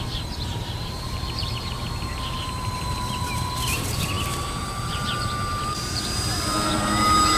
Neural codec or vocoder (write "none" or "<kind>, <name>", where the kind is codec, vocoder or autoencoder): vocoder, BigVGAN v2